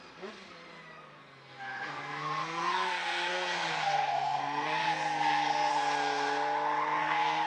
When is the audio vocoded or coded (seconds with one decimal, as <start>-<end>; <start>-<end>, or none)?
1.2-5.7; 7.0-7.5

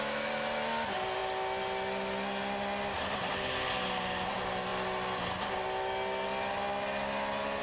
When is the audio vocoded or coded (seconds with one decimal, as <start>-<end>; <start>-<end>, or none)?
none

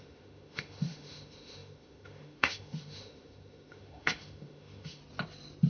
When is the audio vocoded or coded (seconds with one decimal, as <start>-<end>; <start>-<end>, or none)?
0.0-5.0

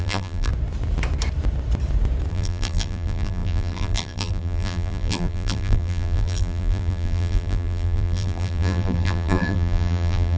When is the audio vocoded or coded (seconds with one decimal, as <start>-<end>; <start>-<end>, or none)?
0.0-0.5; 2.3-10.4

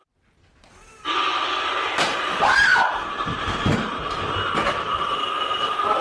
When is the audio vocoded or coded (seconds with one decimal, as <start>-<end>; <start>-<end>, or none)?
1.2-3.9; 5.1-6.0

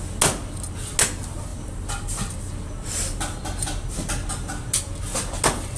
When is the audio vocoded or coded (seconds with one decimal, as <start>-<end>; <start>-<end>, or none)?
1.5-2.5